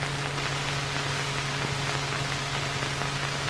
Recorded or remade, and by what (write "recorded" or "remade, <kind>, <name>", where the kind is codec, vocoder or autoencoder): recorded